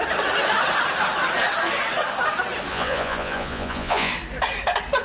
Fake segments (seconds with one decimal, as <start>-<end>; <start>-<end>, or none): 2.7-4.1